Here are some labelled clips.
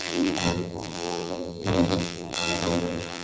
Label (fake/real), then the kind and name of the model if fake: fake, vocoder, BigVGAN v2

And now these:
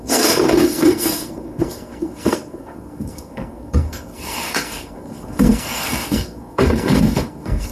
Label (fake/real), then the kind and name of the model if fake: fake, codec, SNAC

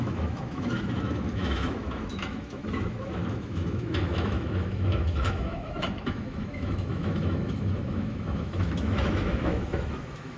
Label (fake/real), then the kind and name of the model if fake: fake, autoencoder, DAC-VAE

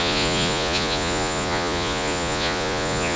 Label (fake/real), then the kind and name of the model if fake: fake, vocoder, Vocos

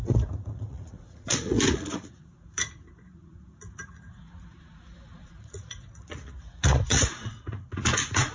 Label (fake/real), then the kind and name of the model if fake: fake, vocoder, Vocos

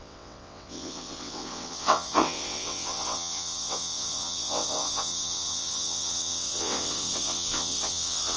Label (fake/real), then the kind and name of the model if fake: fake, vocoder, WaveNeXt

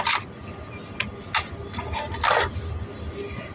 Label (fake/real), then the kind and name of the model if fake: real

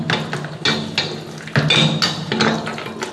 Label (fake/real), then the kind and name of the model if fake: real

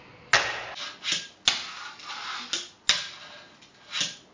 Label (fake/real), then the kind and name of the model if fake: real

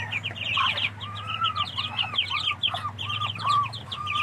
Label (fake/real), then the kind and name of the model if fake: real